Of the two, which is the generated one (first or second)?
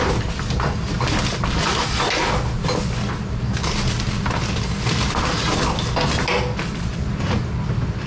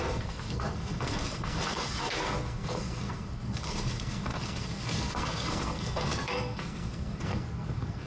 second